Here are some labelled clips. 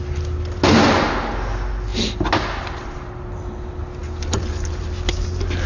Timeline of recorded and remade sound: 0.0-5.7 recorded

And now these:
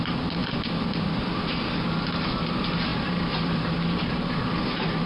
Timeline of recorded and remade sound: 0.0-2.9 recorded; 2.9-4.4 remade; 4.4-5.1 recorded

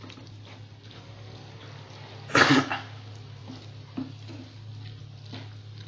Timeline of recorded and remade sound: 0.0-5.9 recorded